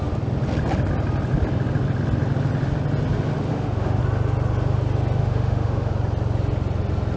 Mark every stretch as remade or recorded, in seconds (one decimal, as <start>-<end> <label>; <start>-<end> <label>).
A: 0.0-3.5 recorded; 3.5-4.0 remade; 4.0-5.2 recorded; 5.2-5.9 remade; 5.9-7.2 recorded